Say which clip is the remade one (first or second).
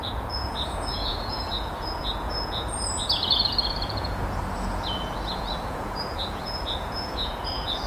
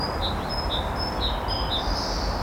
first